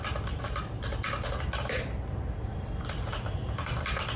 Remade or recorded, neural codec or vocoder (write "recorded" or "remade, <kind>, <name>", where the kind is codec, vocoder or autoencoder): remade, vocoder, BigVGAN v2